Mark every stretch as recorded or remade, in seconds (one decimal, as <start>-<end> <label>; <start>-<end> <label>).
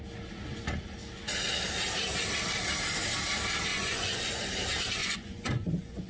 0.0-3.7 recorded; 3.7-4.4 remade; 4.4-5.0 recorded; 5.0-6.1 remade